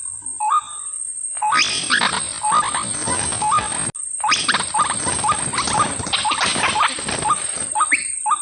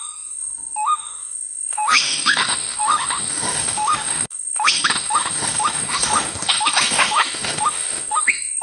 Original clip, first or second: first